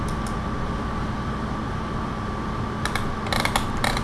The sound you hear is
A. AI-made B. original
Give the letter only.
B